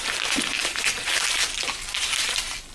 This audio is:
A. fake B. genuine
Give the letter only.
B